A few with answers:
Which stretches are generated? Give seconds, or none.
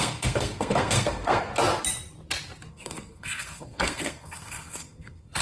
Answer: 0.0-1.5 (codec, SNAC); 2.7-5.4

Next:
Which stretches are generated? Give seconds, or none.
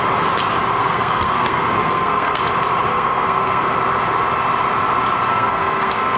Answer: 0.8-2.4 (codec, SNAC); 2.9-3.6; 5.3-6.2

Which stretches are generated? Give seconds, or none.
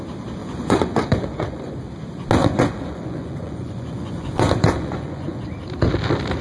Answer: 0.4-1.7 (vocoder, Vocos); 2.4-5.4